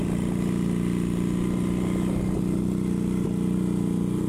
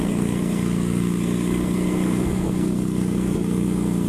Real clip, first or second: first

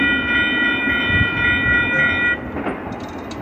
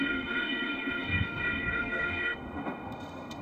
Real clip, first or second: first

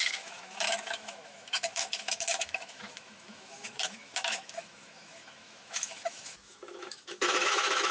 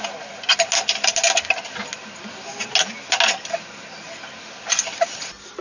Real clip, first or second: second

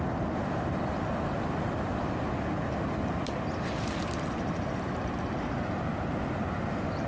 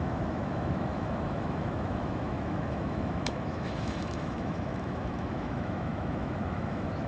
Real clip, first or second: first